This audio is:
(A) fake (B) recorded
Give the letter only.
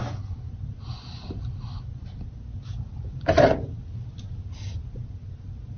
B